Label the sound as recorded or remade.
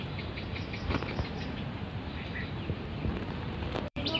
remade